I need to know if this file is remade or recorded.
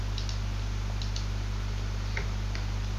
recorded